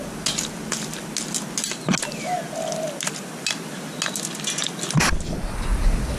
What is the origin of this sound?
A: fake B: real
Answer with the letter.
B